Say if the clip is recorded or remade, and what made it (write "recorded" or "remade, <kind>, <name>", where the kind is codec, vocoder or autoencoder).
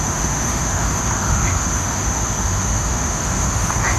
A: remade, autoencoder, DAC-VAE